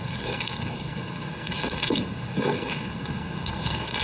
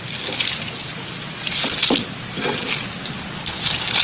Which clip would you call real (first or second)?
second